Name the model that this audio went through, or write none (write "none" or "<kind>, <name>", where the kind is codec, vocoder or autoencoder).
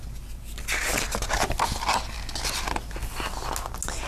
none